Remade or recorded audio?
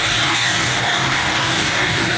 remade